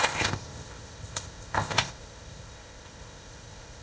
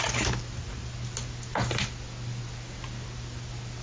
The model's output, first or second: first